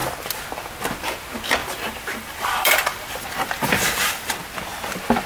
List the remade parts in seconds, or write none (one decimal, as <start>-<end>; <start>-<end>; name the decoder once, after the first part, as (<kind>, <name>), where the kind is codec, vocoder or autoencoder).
1.6-4.3 (vocoder, BigVGAN v2)